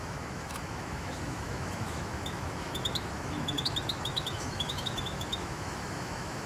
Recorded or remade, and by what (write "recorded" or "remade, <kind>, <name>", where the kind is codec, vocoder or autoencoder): remade, autoencoder, DAC-VAE